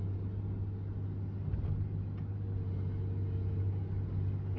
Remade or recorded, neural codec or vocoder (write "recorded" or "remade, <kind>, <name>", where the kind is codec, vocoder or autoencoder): recorded